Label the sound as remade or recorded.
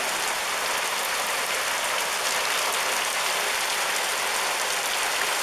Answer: recorded